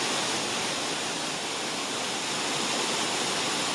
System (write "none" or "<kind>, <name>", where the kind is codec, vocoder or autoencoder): none